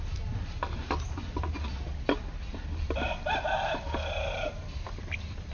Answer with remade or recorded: recorded